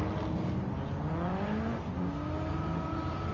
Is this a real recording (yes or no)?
yes